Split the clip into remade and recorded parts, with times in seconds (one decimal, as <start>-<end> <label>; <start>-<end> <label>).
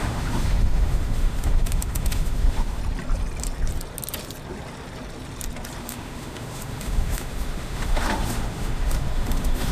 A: 0.0-2.8 remade; 2.8-5.8 recorded; 5.8-9.7 remade